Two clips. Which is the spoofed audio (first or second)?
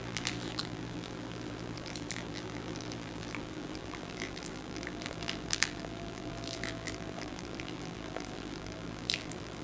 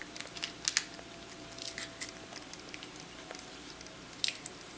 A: first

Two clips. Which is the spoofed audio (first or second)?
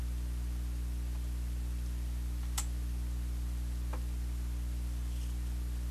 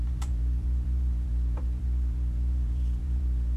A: second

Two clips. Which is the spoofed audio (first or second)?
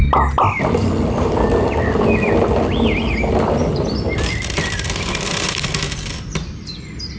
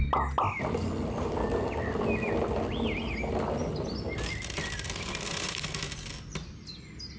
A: first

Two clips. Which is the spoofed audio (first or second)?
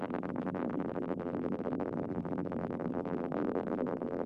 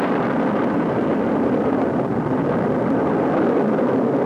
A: first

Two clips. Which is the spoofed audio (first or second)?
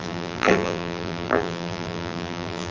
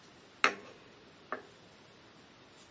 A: first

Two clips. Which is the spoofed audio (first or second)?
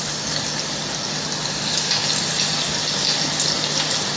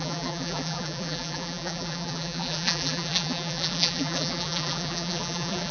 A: second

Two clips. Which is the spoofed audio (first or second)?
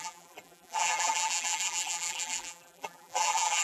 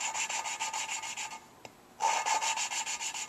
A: first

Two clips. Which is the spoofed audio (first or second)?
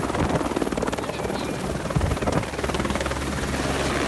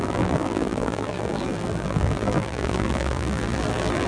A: second